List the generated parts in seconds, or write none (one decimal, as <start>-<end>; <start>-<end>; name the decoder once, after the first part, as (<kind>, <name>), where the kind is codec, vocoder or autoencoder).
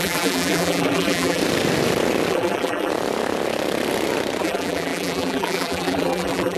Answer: 0.0-1.4 (vocoder, BigVGAN v2); 2.3-2.9; 4.4-6.6